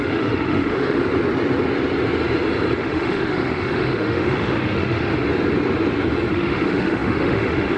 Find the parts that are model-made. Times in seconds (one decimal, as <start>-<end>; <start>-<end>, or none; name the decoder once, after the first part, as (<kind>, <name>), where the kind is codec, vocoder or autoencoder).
0.0-1.0 (autoencoder, DAC-VAE); 2.8-5.1; 6.3-7.8